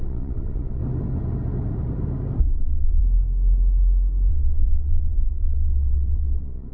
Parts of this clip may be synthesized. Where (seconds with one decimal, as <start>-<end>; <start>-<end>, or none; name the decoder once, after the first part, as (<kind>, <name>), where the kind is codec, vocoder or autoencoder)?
0.0-0.8 (vocoder, WaveNeXt); 2.4-3.0; 4.3-6.7